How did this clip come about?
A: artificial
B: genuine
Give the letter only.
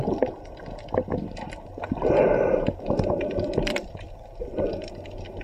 A